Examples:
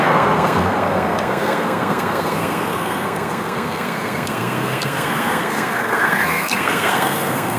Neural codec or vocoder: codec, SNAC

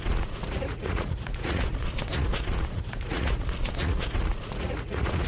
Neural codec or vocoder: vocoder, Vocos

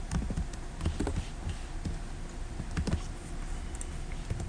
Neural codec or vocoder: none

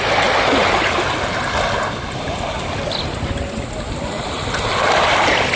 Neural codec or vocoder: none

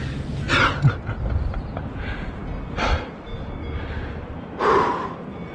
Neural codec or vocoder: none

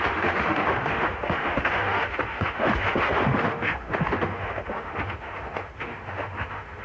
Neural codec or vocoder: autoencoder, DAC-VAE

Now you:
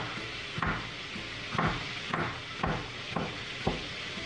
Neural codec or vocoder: none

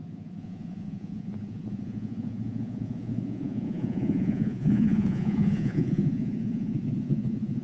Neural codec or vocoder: vocoder, Vocos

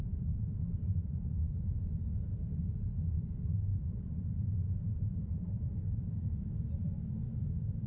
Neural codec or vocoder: vocoder, BigVGAN v2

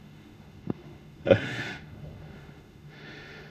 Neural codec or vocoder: autoencoder, DAC-VAE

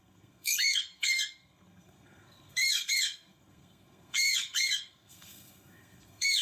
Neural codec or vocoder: codec, SNAC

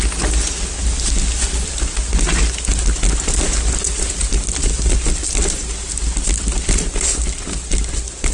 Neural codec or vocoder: none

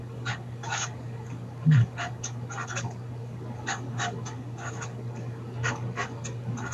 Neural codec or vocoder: codec, DAC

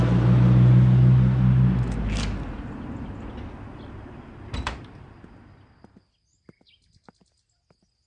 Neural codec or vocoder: none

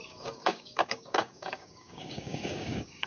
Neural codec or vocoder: codec, DAC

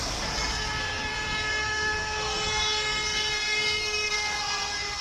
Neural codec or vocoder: codec, SNAC